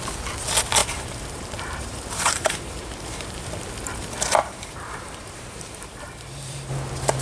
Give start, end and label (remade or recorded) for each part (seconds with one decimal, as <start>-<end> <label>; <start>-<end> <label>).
0.0-0.8 recorded; 0.8-3.5 remade; 3.5-4.4 recorded; 4.4-6.7 remade; 6.7-7.2 recorded